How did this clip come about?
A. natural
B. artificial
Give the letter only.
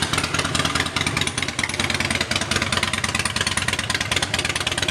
A